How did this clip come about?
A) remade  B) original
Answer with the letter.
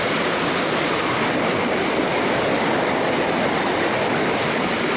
B